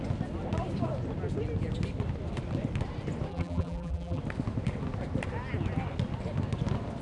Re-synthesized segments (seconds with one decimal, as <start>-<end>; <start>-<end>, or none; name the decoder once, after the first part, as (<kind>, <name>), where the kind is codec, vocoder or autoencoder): 3.3-4.2 (vocoder, BigVGAN v2)

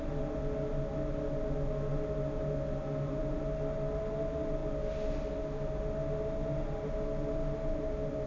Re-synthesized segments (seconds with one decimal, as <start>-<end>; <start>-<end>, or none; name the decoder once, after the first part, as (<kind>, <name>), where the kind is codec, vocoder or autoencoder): none